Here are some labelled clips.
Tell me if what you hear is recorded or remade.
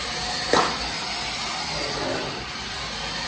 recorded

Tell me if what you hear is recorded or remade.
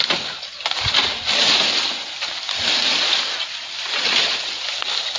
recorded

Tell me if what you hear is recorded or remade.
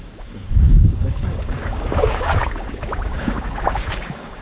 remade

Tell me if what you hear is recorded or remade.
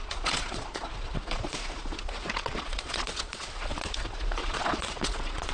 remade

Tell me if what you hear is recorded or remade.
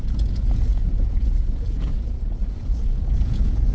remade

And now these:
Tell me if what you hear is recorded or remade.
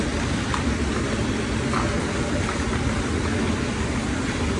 recorded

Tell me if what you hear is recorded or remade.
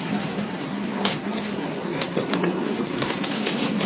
remade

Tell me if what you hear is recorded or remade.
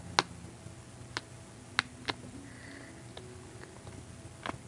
recorded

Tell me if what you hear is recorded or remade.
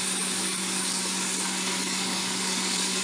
remade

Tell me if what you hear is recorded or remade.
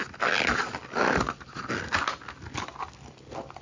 recorded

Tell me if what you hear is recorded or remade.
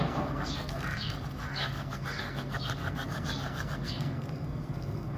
remade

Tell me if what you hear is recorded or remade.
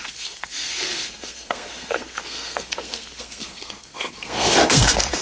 remade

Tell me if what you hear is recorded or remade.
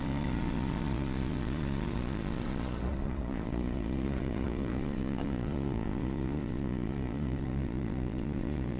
remade